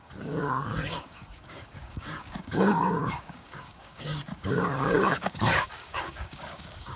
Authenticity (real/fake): fake